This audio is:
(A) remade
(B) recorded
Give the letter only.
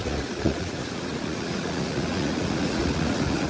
A